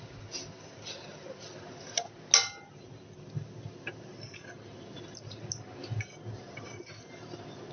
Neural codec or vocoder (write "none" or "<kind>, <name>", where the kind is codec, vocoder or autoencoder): none